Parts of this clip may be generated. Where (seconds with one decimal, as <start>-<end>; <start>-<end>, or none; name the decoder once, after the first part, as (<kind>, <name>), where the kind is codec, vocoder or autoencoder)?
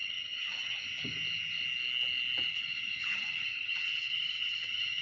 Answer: 0.0-0.8 (vocoder, HiFi-GAN); 2.5-5.0